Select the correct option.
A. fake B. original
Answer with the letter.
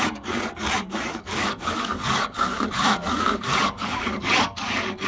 A